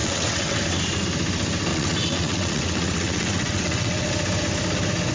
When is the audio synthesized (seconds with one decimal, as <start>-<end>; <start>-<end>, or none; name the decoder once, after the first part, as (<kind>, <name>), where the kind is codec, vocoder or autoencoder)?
0.0-0.6 (vocoder, WaveNeXt); 1.7-4.1